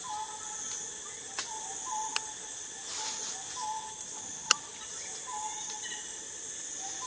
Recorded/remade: recorded